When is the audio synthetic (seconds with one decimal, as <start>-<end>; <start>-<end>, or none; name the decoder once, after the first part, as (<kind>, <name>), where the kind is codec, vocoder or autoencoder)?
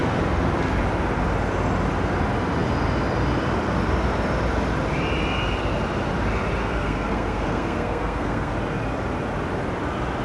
6.6-8.5 (codec, SNAC)